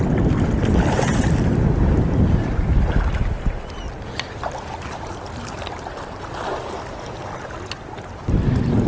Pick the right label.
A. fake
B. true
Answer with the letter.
B